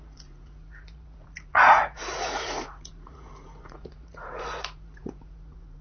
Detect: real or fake fake